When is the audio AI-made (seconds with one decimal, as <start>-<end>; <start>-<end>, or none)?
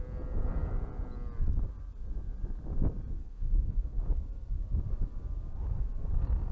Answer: 3.2-4.0